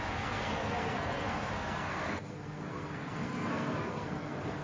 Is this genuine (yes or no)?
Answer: no